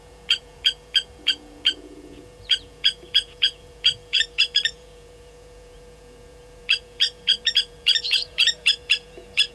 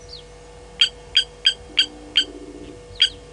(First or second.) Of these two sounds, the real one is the second